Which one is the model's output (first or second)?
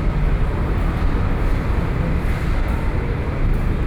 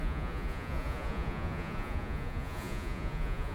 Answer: second